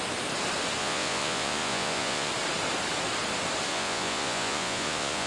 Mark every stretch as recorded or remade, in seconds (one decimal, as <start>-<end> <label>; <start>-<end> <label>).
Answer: 0.0-0.8 recorded; 0.8-2.3 remade; 2.3-3.7 recorded; 3.7-5.3 remade